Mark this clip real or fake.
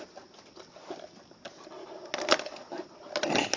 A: real